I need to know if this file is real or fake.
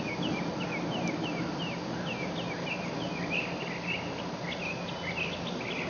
real